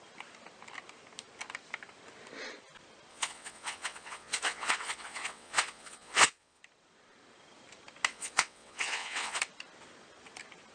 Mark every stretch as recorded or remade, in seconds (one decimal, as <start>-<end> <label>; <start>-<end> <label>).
0.0-3.1 recorded; 3.1-6.6 remade; 6.6-8.1 recorded; 8.1-9.4 remade; 9.4-10.7 recorded